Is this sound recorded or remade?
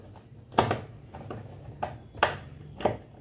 recorded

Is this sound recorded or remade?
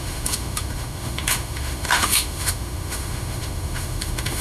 remade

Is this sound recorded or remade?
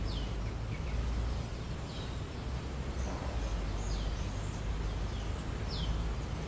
recorded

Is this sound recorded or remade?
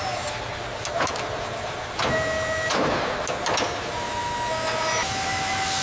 recorded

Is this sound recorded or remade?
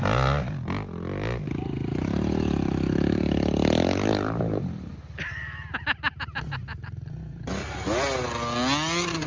recorded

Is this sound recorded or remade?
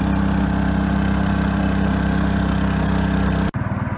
recorded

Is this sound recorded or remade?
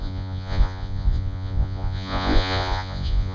remade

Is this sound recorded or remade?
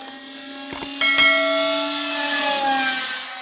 recorded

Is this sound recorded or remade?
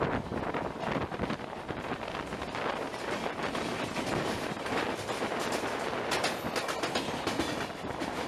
recorded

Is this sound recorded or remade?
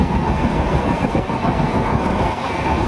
remade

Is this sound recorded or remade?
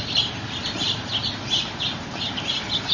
recorded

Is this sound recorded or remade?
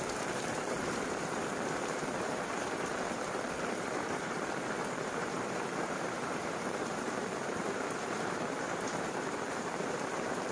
remade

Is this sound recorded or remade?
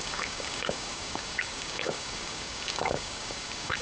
remade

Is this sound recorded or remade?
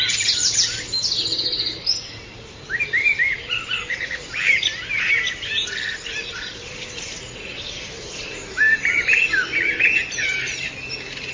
recorded